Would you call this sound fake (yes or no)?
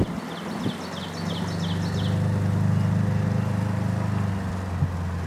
no